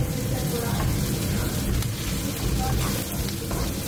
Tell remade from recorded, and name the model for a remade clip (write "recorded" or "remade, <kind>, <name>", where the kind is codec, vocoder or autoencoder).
recorded